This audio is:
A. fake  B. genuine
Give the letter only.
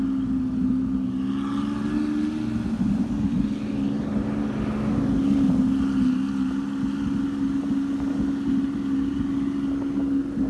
B